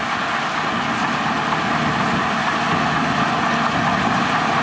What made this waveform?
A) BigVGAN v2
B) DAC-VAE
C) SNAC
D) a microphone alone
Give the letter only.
D